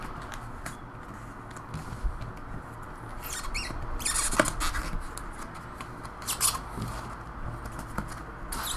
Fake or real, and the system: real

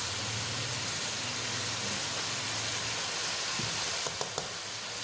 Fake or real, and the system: real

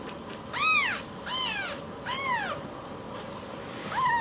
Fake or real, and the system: real